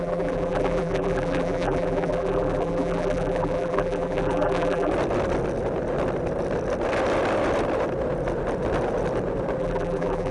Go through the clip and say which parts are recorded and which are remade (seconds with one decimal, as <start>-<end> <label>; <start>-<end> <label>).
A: 0.0-4.9 remade; 4.9-9.6 recorded; 9.6-10.3 remade